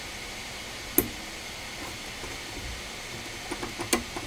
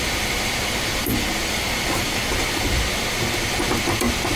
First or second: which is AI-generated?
second